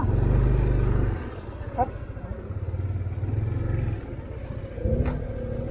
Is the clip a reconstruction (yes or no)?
no